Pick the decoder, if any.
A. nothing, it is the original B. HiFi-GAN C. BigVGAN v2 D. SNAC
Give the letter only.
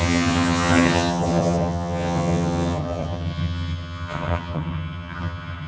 B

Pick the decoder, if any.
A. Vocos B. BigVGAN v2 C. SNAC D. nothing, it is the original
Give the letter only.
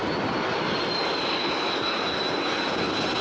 D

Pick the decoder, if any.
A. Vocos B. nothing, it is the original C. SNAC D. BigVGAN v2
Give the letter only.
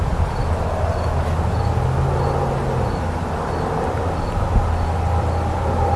B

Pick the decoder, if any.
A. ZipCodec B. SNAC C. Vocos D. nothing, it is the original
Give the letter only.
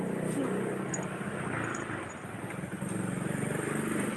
D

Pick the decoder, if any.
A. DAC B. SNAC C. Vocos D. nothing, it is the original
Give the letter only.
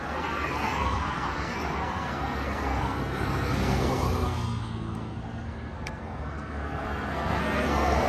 B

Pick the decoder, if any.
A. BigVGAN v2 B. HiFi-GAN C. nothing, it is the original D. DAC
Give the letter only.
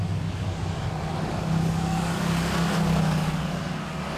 D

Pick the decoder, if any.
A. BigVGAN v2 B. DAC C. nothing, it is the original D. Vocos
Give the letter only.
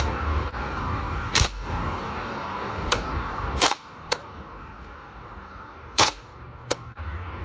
B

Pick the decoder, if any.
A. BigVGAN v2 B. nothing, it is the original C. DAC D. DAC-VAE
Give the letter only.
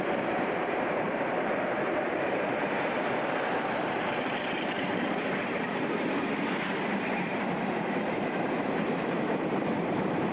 A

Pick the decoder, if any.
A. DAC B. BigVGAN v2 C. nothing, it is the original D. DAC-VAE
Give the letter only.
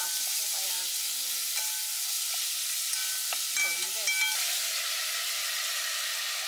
C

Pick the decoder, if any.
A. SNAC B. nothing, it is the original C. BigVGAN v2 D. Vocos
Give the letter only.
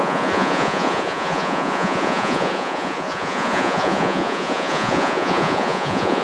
D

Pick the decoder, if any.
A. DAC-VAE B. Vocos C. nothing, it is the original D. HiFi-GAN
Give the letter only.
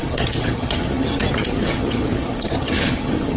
D